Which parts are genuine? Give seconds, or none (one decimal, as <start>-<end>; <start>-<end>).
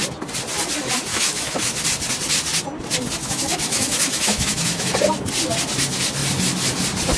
0.0-1.1; 1.8-3.2; 4.9-7.2